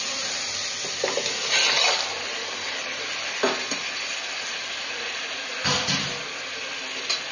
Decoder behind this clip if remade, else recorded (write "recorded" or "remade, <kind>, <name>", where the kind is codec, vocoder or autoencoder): recorded